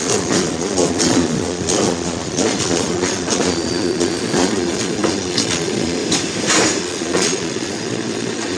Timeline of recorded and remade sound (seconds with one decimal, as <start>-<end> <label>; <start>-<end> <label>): 0.0-6.0 remade; 6.0-6.8 recorded; 6.8-8.6 remade